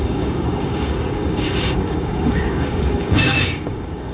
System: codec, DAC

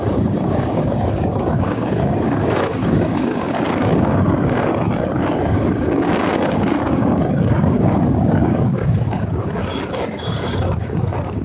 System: codec, DAC